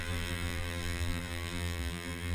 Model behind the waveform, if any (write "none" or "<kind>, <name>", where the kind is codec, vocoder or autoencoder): vocoder, BigVGAN v2